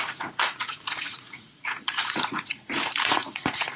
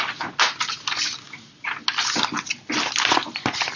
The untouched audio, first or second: second